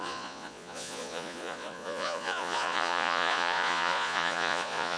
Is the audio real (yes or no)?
no